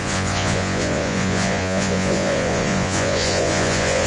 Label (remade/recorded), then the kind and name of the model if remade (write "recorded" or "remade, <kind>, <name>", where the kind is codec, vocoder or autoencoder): remade, vocoder, Vocos